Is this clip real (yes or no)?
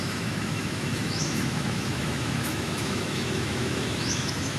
no